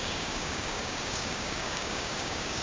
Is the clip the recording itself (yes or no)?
no